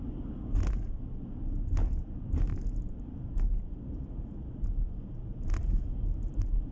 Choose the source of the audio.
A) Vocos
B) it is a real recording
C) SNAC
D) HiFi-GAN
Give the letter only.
B